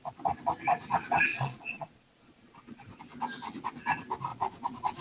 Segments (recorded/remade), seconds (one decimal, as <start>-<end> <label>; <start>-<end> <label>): 0.0-1.3 recorded; 1.3-3.0 remade; 3.0-4.3 recorded; 4.3-5.0 remade